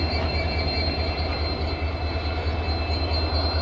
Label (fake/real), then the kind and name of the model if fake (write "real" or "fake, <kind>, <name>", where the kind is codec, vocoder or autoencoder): real